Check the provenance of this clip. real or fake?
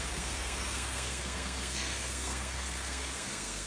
fake